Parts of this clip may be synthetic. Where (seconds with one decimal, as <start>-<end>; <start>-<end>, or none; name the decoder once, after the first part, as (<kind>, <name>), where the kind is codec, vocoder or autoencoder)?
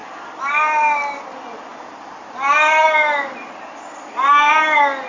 none